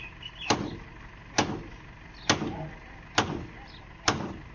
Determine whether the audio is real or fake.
real